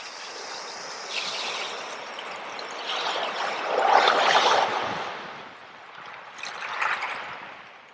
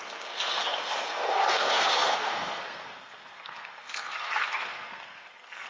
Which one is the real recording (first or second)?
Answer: first